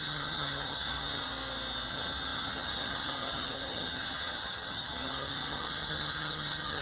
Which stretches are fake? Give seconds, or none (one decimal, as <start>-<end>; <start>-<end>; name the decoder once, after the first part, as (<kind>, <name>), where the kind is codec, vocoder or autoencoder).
0.0-1.3 (vocoder, HiFi-GAN); 1.9-6.8